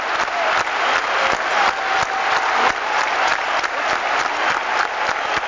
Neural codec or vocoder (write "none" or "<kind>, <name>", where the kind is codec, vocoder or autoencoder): none